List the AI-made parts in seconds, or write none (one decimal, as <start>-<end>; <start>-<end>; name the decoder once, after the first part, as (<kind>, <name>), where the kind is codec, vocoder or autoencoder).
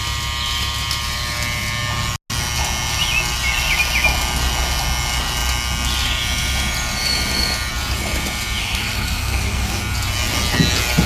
8.6-9.8 (codec, SNAC)